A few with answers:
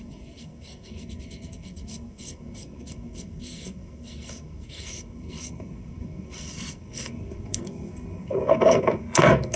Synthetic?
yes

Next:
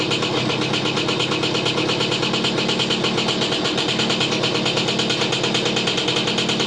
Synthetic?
no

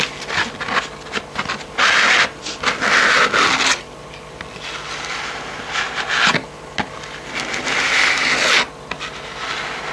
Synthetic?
no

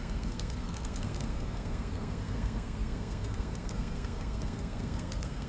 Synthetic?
yes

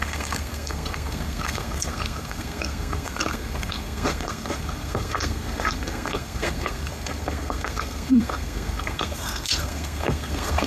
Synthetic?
yes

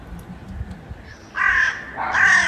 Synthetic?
no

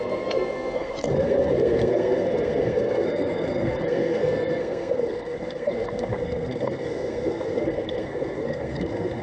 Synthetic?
yes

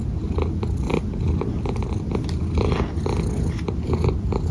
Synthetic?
no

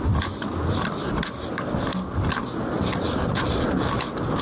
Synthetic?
no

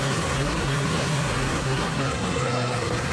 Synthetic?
yes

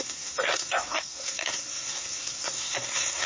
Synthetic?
yes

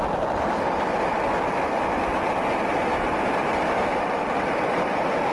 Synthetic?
no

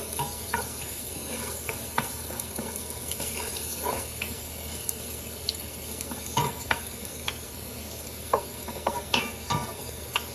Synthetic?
yes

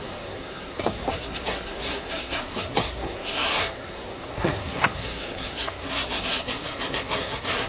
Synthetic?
yes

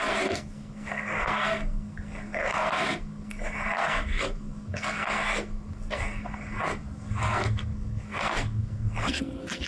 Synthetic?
yes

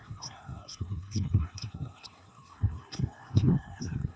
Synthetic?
yes